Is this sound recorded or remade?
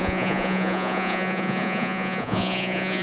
remade